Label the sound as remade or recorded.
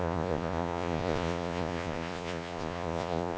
remade